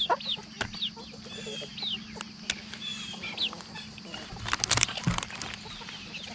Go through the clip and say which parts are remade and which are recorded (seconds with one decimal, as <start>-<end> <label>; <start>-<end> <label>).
0.0-6.3 recorded